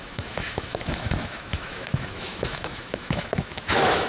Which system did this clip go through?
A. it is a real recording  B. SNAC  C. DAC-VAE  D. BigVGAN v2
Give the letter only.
C